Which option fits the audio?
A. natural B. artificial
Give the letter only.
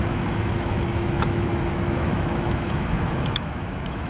B